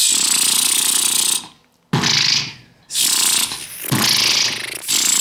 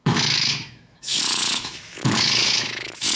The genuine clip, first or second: first